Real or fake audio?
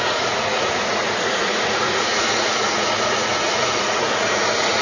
fake